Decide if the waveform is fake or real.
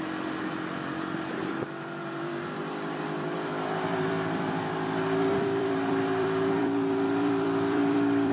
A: fake